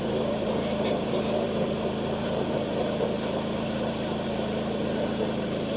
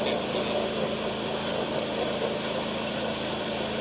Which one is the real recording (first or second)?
second